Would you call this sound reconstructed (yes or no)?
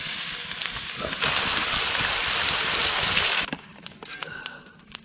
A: no